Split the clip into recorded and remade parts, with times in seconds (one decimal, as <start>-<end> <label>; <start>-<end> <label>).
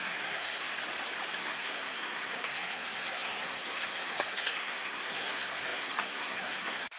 0.0-0.7 remade; 0.7-1.4 recorded; 1.4-7.0 remade